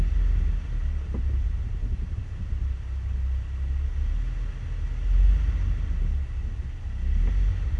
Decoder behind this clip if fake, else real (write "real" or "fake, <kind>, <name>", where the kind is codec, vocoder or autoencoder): real